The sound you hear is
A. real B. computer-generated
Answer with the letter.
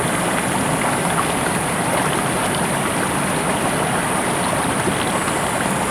A